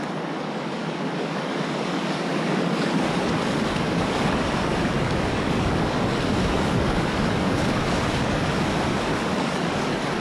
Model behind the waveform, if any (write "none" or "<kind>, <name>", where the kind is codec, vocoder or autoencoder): codec, DAC